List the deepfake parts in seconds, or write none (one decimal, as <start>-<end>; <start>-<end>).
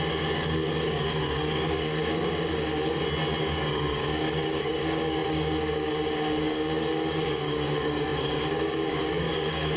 0.0-2.7; 3.4-9.8